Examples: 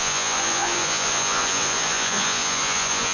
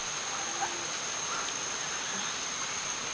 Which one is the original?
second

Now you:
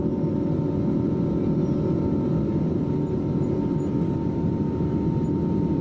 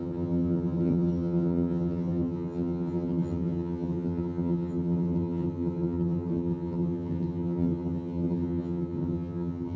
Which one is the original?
first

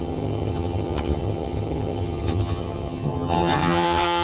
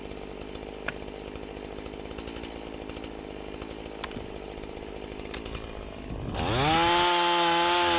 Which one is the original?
second